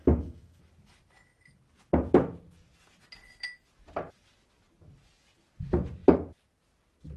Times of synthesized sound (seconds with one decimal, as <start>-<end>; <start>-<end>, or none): 0.0-0.6